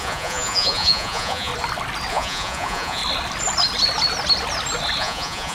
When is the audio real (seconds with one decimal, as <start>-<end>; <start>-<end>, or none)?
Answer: 1.5-2.1; 3.0-5.0